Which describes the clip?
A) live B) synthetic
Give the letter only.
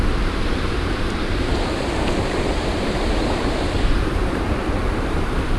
B